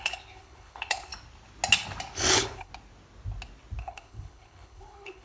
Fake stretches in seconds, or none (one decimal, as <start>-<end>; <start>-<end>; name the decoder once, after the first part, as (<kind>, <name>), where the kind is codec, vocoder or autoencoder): 0.0-1.1 (codec, HILCodec); 2.3-2.7; 3.8-5.2